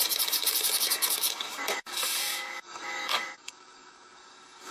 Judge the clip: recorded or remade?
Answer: remade